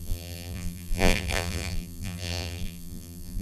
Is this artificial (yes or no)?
yes